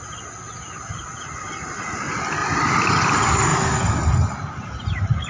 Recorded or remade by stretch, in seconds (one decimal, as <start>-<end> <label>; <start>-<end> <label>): 0.0-2.4 recorded; 2.4-3.0 remade; 3.0-3.5 recorded; 3.5-4.1 remade; 4.1-5.3 recorded